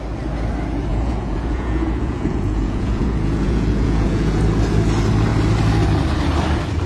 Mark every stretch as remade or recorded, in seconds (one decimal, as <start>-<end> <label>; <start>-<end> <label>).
0.0-0.9 recorded; 0.9-4.4 remade; 4.4-6.9 recorded